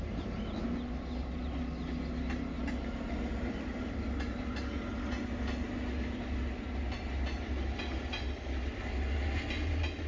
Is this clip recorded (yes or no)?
yes